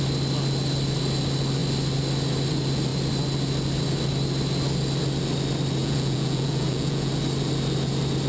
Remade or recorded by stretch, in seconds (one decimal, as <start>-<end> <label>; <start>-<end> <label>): 0.0-5.8 recorded; 5.8-7.1 remade; 7.1-8.3 recorded